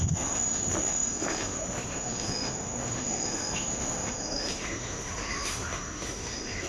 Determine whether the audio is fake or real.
fake